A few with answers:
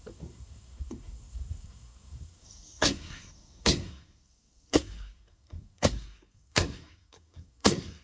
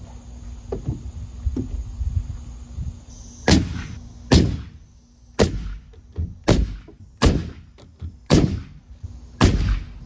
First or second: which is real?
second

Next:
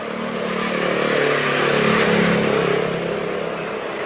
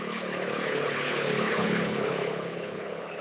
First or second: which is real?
first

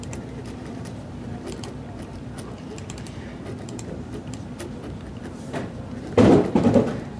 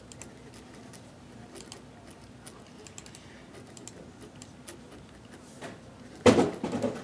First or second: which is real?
second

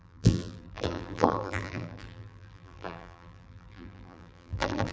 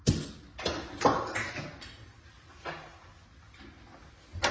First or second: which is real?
second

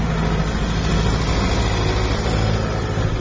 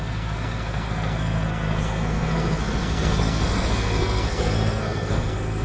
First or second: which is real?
first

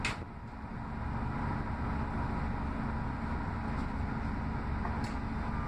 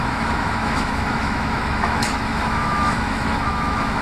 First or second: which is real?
first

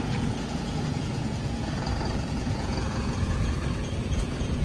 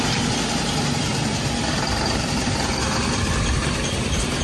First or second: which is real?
second